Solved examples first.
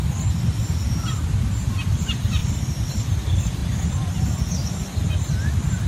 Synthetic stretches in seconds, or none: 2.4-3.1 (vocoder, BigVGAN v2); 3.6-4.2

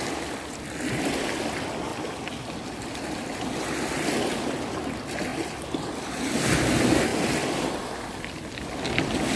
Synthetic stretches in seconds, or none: none

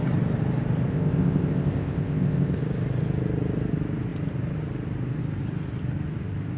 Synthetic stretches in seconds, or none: 0.9-2.6 (codec, ZipCodec)

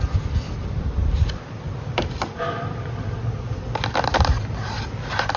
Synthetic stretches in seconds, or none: 1.0-4.2 (vocoder, BigVGAN v2)

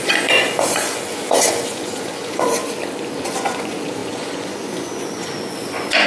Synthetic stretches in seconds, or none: 0.0-2.6 (vocoder, Vocos); 3.2-6.1

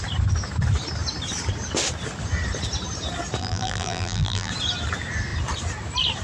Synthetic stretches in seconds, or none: 3.4-4.5 (vocoder, BigVGAN v2)